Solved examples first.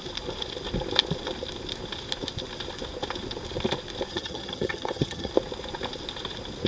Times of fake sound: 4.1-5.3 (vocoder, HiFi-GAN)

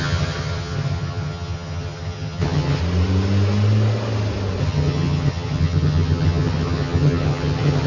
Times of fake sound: 0.0-2.8 (vocoder, HiFi-GAN); 4.6-7.9